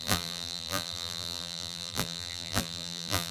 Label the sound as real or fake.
fake